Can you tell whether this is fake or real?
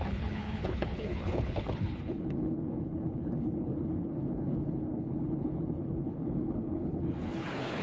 fake